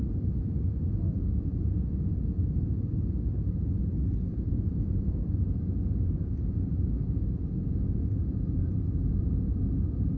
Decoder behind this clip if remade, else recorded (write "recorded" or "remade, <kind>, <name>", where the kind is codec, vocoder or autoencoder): remade, vocoder, Vocos